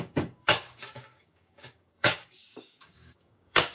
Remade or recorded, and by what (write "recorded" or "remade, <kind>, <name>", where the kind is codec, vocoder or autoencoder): remade, codec, DAC